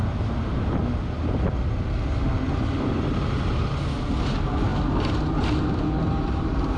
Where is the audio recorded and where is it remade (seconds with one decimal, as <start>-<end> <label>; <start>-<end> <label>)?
0.0-0.8 remade; 0.8-2.1 recorded; 2.1-3.7 remade; 3.7-4.3 recorded; 4.3-4.7 remade; 4.7-6.0 recorded; 6.0-6.8 remade